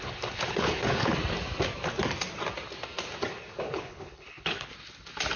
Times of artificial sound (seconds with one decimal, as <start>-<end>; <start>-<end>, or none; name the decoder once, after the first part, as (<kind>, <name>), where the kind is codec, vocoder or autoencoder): 0.0-1.1 (codec, HILCodec); 3.6-4.7